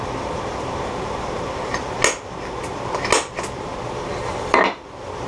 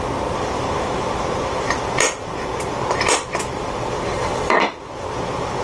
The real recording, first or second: first